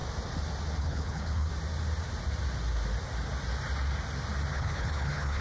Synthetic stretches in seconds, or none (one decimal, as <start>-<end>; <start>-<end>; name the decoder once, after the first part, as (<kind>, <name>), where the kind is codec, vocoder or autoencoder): 0.8-1.5 (codec, HILCodec); 4.5-5.4